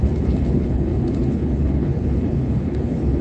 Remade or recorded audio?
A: remade